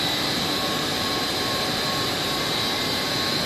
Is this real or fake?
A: fake